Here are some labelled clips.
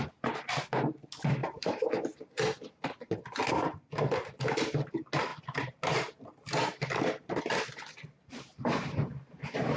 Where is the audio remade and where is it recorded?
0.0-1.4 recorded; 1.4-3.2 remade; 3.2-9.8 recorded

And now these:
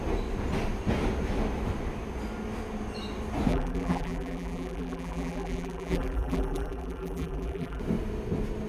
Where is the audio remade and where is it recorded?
0.0-3.5 recorded; 3.5-7.8 remade; 7.8-8.7 recorded